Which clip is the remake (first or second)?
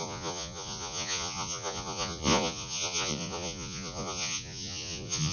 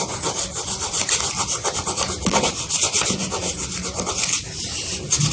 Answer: first